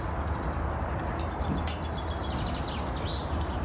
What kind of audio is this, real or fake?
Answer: real